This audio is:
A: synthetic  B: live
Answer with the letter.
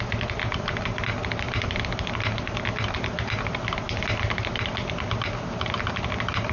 B